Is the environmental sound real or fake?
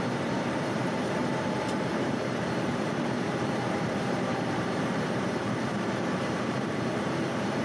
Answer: fake